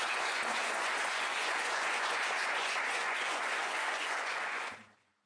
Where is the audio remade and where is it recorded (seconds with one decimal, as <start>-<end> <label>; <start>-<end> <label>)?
0.0-5.3 remade